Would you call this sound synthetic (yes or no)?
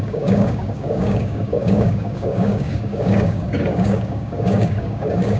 yes